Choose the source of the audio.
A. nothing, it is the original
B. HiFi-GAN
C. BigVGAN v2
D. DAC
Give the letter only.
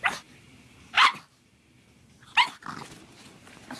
A